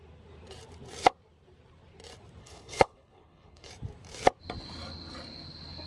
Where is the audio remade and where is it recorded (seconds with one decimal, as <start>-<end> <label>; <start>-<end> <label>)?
0.0-2.4 recorded; 2.4-3.7 remade; 3.7-5.9 recorded